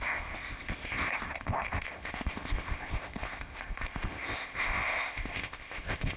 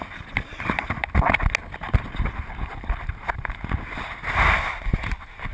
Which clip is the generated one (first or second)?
first